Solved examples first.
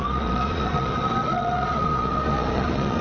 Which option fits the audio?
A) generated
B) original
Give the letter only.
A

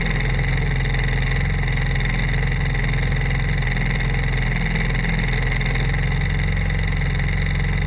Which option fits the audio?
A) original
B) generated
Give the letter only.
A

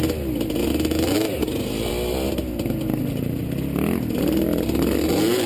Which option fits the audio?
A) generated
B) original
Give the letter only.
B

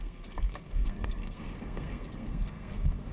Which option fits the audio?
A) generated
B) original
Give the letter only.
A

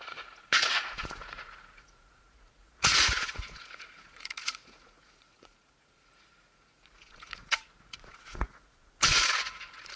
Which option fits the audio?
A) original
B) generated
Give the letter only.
B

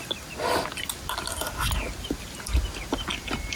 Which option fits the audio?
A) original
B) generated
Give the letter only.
A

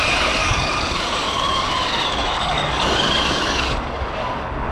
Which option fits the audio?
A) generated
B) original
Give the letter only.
A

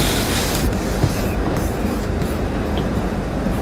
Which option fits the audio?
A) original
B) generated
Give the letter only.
B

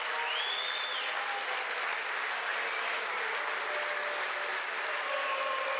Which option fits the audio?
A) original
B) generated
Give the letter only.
A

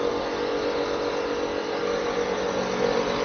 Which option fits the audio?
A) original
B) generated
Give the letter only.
A